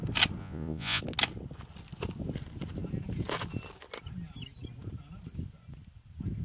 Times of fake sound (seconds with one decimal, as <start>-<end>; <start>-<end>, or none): 0.4-1.0